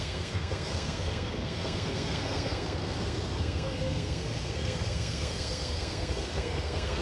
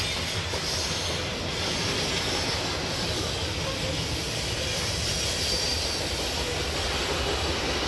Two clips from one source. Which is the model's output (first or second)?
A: first